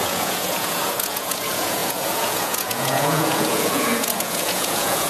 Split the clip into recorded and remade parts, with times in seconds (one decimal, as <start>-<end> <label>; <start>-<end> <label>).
0.0-5.1 remade